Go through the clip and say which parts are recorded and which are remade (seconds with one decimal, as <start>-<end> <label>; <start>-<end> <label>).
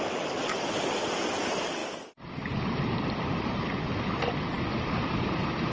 0.0-5.7 recorded